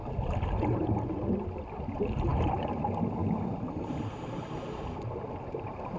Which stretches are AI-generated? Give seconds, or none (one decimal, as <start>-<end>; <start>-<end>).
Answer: none